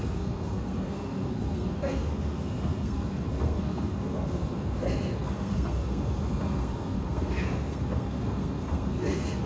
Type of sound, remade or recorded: remade